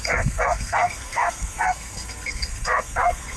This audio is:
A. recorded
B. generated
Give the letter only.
B